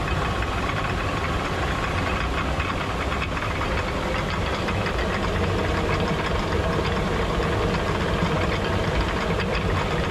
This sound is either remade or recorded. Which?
recorded